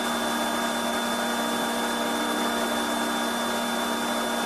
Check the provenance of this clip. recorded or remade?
remade